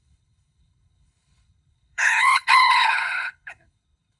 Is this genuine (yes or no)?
no